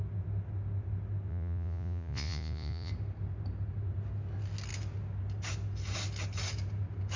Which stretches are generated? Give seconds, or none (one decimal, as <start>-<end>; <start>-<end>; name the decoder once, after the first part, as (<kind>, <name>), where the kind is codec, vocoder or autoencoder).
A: 1.3-2.9 (vocoder, Vocos)